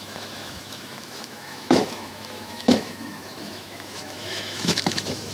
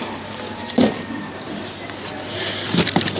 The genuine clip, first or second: second